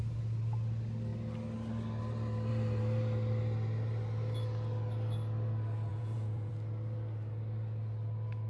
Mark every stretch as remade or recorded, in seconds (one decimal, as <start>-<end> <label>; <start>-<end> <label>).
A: 0.0-5.9 recorded; 5.9-6.5 remade; 6.5-8.5 recorded